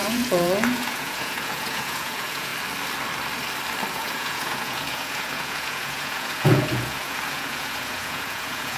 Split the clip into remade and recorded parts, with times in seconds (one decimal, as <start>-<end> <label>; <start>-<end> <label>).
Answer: 0.0-2.5 remade; 2.5-3.9 recorded; 3.9-8.8 remade